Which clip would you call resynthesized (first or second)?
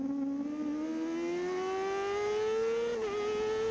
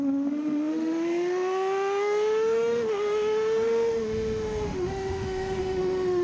second